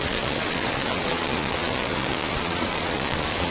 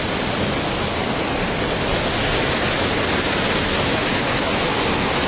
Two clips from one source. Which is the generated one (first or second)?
first